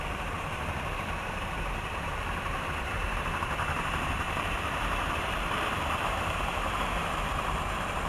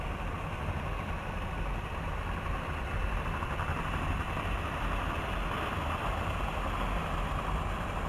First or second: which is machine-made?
first